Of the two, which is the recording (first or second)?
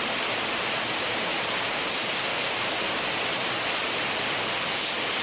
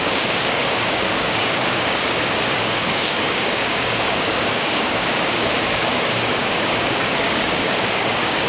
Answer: first